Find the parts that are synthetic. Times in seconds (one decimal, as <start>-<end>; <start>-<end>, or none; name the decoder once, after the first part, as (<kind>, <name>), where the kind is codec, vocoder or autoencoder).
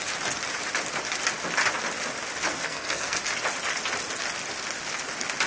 2.5-3.2 (codec, SNAC)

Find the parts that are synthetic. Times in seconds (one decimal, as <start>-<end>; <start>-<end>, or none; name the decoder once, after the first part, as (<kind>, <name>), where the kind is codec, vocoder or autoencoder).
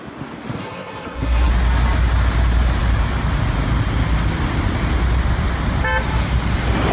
0.6-1.5 (codec, SNAC)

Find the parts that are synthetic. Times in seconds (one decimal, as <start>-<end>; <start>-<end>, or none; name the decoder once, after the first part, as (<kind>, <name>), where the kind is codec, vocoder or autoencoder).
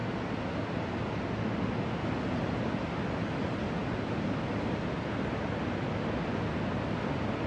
none